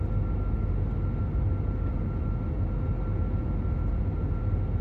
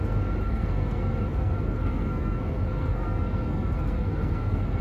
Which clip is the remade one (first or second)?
second